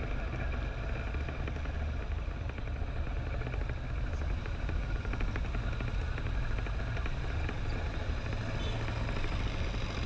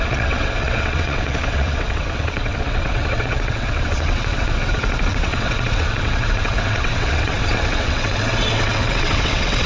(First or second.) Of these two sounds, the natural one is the first